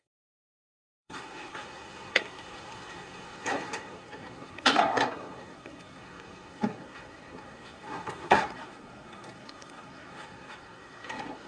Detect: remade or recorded remade